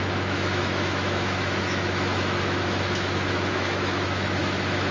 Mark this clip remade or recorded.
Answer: remade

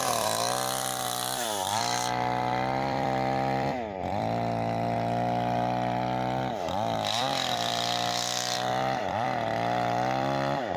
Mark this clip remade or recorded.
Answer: remade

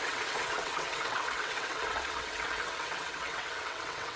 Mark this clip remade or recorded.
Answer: remade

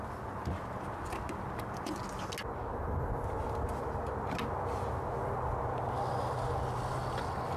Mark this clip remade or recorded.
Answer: recorded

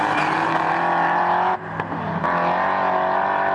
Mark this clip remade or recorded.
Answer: recorded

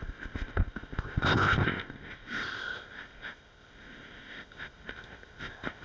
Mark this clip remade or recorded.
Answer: remade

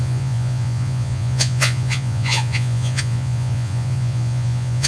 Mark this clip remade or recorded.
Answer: remade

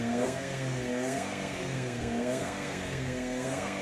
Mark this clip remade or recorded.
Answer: remade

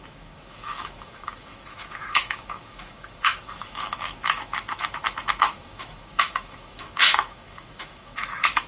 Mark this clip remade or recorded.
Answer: remade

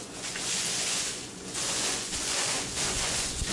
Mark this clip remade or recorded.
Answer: remade